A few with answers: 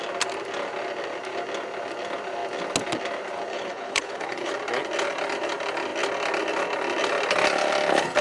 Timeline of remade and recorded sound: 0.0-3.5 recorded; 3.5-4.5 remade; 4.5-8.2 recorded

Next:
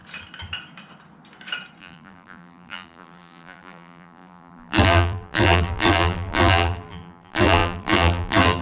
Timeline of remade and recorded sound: 0.0-1.8 recorded; 1.8-8.6 remade